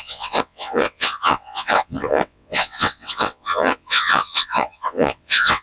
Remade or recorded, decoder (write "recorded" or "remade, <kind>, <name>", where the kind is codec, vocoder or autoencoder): remade, vocoder, WaveNeXt